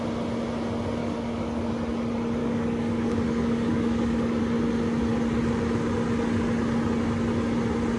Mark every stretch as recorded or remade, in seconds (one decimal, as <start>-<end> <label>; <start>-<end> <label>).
0.0-1.0 recorded; 1.0-1.7 remade; 1.7-2.4 recorded; 2.4-4.4 remade; 4.4-8.0 recorded